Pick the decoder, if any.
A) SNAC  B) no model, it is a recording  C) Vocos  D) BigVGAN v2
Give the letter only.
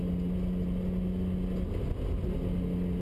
B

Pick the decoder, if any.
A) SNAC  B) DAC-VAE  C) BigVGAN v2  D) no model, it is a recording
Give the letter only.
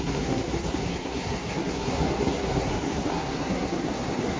A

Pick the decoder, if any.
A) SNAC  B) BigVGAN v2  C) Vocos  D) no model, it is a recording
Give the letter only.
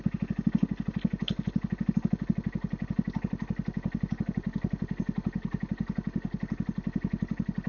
D